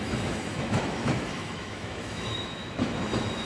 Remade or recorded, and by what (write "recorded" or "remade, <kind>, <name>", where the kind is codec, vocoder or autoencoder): remade, autoencoder, DAC-VAE